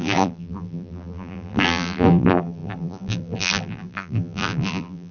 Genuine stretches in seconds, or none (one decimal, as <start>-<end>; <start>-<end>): none